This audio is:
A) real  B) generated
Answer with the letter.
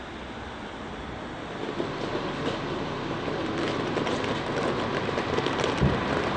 A